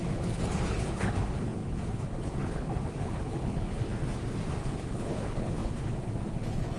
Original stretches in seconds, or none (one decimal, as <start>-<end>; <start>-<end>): 3.9-4.6